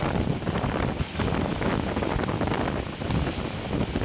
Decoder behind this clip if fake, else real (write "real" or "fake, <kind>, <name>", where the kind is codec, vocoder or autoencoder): real